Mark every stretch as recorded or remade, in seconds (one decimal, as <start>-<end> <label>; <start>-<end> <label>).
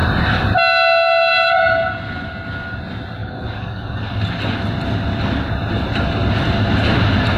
0.0-3.2 recorded; 3.2-4.0 remade; 4.0-7.4 recorded